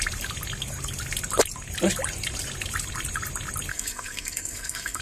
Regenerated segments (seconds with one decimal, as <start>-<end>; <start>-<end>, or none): 3.7-5.0